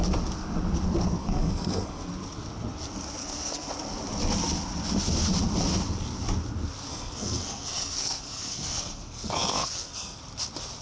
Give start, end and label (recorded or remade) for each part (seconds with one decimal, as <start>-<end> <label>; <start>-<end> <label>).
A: 0.0-1.2 recorded; 1.2-2.1 remade; 2.1-3.2 recorded; 3.2-3.7 remade; 3.7-6.9 recorded; 6.9-10.2 remade; 10.2-10.8 recorded